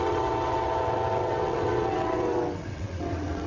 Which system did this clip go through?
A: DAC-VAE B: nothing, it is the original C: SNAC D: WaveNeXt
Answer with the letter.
D